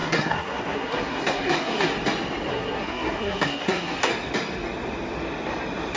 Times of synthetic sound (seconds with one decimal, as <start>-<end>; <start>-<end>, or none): 0.0-1.9; 2.5-4.1